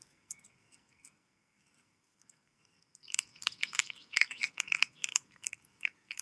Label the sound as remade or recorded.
remade